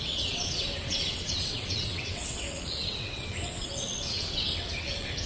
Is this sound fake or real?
fake